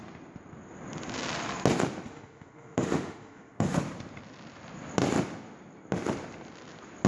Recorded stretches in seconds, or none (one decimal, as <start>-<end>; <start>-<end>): 0.0-2.1; 3.8-7.1